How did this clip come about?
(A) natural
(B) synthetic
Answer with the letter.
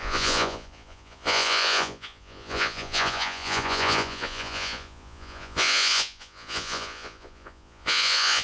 B